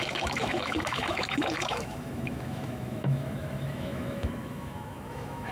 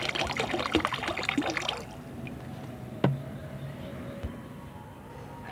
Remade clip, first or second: first